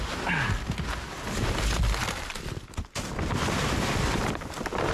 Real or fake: real